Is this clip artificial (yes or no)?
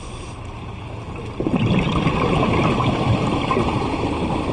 no